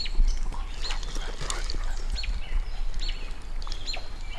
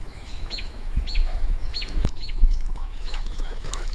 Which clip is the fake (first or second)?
second